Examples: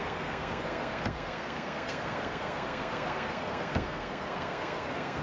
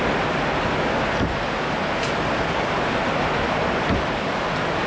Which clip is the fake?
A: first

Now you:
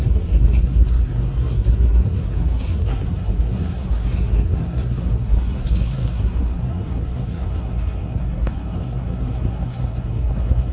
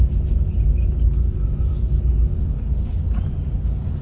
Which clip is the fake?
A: first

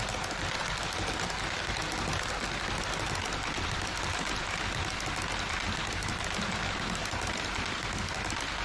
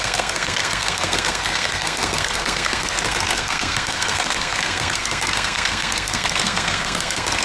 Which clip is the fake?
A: second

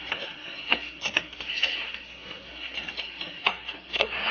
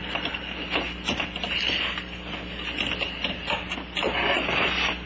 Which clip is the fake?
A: first